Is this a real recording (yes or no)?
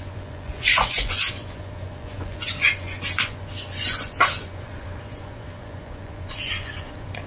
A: no